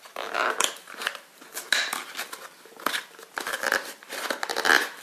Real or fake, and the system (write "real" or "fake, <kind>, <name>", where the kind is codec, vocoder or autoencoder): real